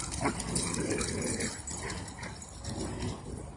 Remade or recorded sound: recorded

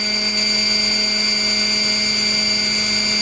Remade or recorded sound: recorded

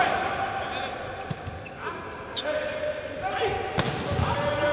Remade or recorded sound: recorded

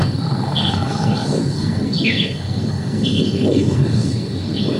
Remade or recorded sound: remade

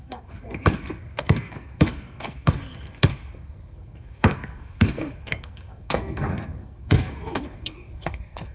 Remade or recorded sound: remade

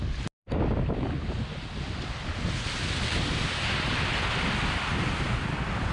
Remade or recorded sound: recorded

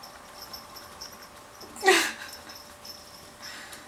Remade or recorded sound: recorded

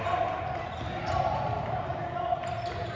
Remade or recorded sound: recorded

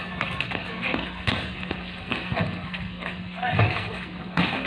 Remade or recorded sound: remade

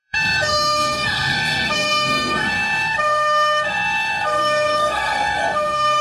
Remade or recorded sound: remade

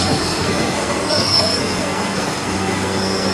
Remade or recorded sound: remade